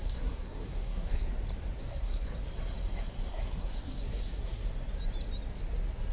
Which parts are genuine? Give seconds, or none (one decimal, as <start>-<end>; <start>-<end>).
1.2-1.8; 2.3-3.3; 4.7-6.1